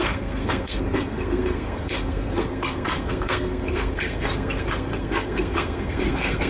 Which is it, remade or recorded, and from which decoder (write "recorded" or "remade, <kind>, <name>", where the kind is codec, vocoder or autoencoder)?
remade, codec, SNAC